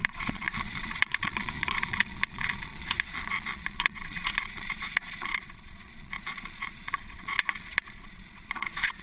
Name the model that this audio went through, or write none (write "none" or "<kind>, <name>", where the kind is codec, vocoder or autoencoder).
vocoder, Vocos